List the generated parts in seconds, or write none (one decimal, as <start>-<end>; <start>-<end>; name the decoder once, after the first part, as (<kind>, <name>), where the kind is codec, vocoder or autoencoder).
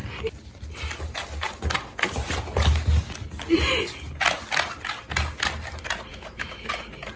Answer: 6.1-6.7 (autoencoder, DAC-VAE)